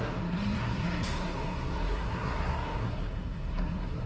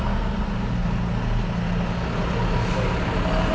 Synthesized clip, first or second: first